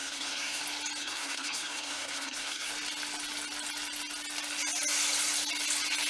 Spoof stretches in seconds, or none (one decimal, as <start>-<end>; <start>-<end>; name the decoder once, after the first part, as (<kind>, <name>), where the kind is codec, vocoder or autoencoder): 0.0-0.6 (codec, SNAC); 1.0-2.7